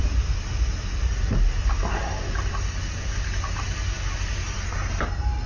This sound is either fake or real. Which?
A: real